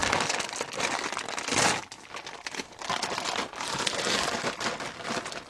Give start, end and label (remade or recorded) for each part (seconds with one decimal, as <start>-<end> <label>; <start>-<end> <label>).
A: 0.0-5.5 recorded